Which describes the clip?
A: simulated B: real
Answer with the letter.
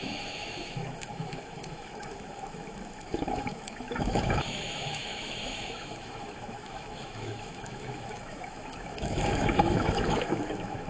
A